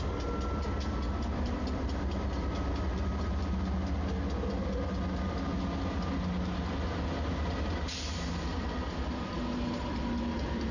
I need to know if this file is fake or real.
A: real